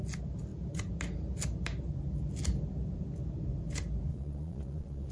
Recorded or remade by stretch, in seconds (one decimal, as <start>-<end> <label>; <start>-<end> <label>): 0.0-4.1 recorded; 4.1-5.1 remade